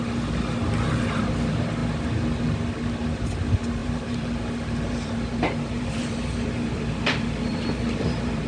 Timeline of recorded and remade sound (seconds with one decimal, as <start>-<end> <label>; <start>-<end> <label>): 0.0-3.8 recorded; 3.8-8.5 remade